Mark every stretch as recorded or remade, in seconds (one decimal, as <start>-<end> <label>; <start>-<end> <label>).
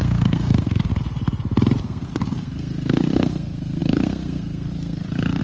0.0-0.9 remade; 0.9-1.8 recorded; 1.8-5.4 remade